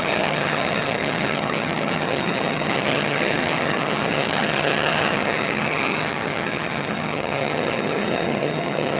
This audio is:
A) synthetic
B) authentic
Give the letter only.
A